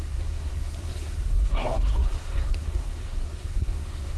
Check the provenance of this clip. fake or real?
fake